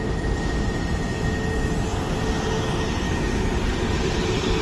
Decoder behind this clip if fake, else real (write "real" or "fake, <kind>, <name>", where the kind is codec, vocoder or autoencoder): real